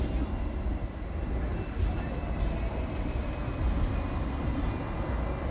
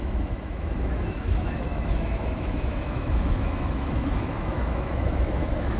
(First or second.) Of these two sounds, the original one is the first